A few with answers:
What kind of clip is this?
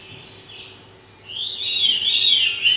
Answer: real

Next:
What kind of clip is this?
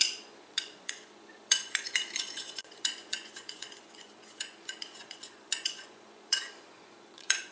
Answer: fake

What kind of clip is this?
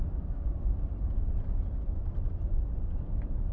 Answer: real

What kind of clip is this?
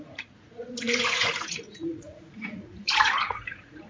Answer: fake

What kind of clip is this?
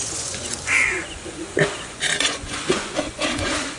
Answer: fake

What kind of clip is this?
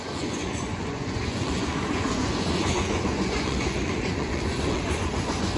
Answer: fake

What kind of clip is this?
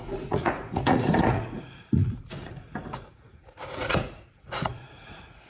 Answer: fake